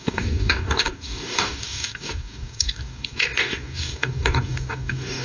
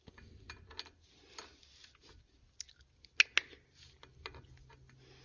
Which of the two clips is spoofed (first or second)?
first